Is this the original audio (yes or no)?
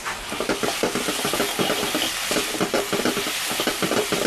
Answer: yes